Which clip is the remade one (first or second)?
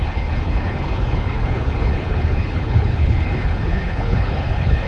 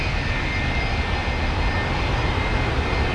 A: first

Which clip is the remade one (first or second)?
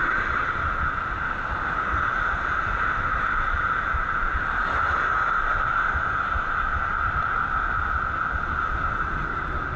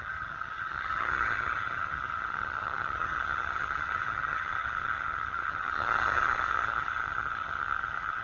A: second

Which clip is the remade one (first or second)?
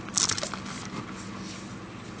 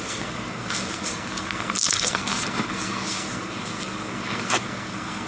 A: second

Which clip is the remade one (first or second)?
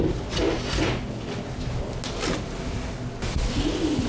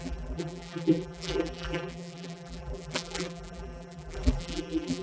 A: second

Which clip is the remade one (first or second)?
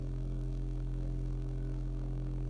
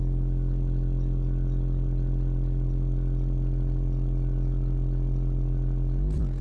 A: first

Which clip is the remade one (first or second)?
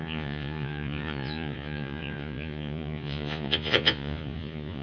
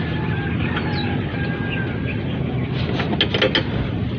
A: first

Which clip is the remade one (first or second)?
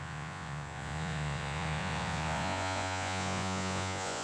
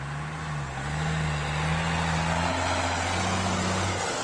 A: first